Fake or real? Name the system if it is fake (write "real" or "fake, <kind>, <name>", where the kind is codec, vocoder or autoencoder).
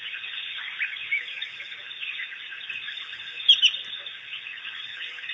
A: real